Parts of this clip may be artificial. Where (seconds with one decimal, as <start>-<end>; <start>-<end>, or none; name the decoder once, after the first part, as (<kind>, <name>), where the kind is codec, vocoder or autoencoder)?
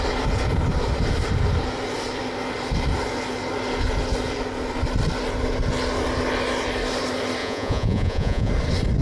7.4-8.5 (vocoder, Vocos)